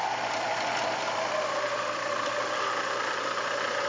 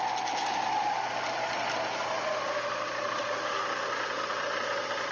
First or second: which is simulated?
first